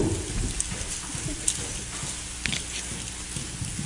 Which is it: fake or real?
real